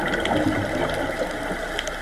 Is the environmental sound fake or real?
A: real